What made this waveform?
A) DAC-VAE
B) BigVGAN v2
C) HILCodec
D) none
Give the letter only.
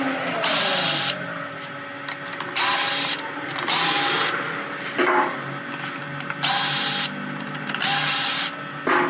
D